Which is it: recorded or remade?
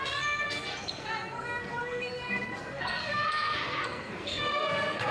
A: remade